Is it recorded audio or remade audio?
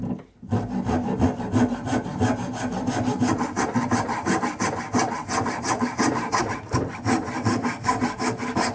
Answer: recorded